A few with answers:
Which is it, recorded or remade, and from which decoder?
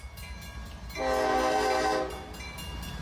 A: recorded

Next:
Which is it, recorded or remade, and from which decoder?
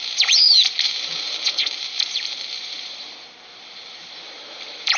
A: remade, vocoder, BigVGAN v2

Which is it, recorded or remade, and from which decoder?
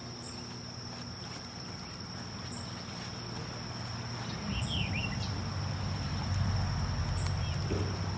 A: recorded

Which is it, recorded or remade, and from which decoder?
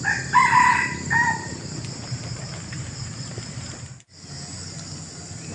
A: recorded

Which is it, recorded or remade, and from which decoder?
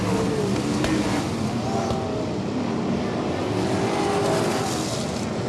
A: recorded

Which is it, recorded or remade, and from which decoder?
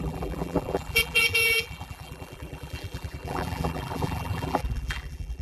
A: remade, vocoder, BigVGAN v2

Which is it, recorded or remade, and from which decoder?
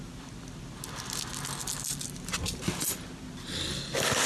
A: recorded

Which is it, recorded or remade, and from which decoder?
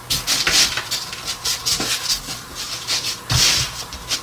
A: recorded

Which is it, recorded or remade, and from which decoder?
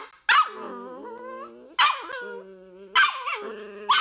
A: recorded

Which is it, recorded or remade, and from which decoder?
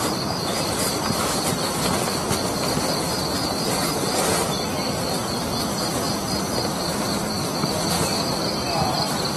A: remade, vocoder, BigVGAN v2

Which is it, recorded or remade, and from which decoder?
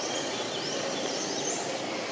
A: recorded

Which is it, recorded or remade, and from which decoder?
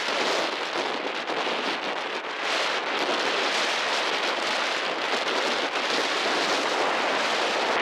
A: recorded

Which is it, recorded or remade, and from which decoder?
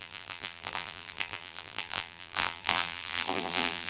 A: remade, vocoder, BigVGAN v2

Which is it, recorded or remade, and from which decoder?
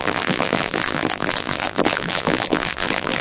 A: remade, vocoder, BigVGAN v2